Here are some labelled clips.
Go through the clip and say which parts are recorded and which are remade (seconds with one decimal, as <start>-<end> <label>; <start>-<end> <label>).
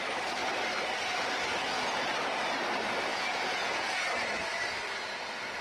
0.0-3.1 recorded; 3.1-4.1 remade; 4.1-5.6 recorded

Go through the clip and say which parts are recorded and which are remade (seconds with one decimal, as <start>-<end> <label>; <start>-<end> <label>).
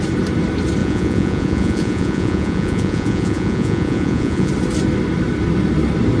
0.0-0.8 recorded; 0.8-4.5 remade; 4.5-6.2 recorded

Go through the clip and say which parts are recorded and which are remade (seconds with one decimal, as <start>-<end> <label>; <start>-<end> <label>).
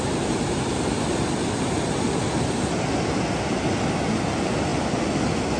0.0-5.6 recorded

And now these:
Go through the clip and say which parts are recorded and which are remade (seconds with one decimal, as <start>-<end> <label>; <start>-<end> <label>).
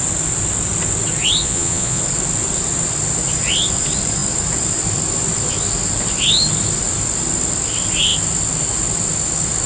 0.0-1.4 recorded; 1.4-2.0 remade; 2.0-9.7 recorded